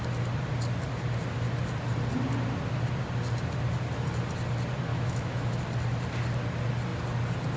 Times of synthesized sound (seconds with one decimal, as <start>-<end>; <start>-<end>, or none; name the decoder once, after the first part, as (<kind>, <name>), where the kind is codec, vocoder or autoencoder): 4.9-5.6 (autoencoder, DAC-VAE)